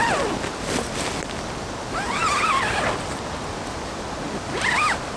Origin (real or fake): real